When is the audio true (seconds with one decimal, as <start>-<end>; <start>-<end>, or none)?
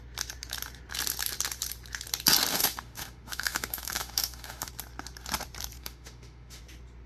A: 0.0-2.5; 4.7-5.8; 6.6-7.1